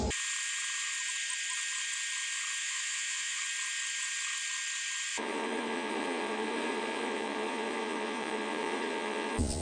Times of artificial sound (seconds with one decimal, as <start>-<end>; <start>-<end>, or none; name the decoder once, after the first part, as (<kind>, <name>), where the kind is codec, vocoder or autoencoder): 2.6-3.4 (vocoder, Vocos); 5.1-9.6